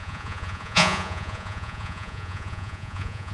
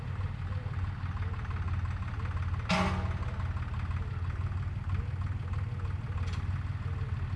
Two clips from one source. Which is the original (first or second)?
second